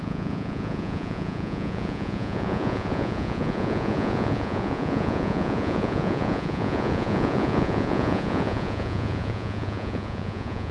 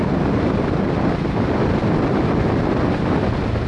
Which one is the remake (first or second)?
first